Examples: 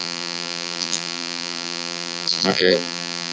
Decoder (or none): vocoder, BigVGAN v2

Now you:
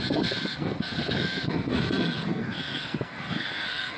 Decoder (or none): codec, SNAC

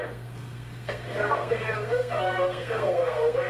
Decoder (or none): codec, SNAC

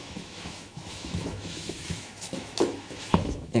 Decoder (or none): autoencoder, DAC-VAE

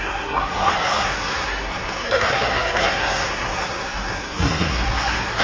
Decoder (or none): codec, SNAC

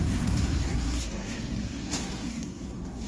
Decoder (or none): codec, SNAC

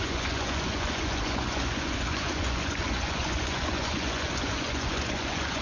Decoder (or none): vocoder, Vocos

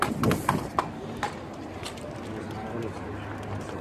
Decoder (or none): none